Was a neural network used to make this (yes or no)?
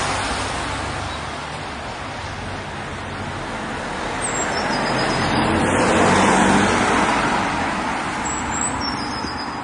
no